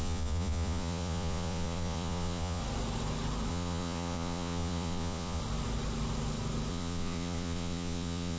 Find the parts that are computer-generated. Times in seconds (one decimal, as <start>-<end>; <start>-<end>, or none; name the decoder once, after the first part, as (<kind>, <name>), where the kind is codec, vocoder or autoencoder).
0.0-2.6 (vocoder, Vocos); 3.5-5.4; 6.7-8.4